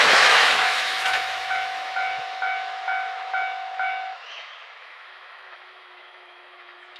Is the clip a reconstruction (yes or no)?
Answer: yes